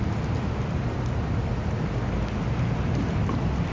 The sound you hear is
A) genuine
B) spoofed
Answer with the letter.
A